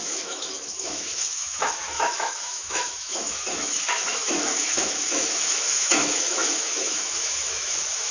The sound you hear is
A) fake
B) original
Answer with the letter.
A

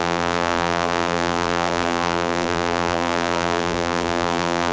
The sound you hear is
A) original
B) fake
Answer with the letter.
B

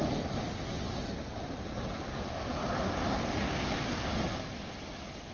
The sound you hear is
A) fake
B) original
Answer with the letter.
B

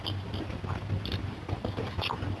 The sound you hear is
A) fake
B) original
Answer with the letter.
B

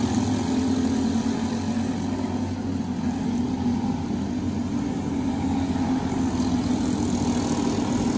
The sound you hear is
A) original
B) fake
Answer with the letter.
A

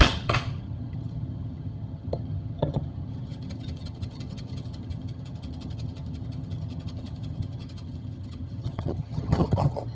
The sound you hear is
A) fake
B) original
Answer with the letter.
A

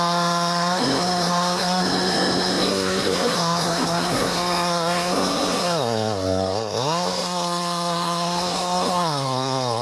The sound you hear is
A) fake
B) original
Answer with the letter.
A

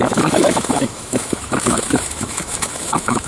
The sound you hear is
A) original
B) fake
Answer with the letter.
B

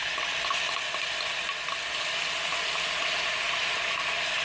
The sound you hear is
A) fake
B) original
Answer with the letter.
B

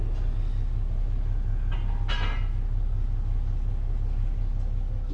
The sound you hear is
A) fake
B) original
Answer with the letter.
B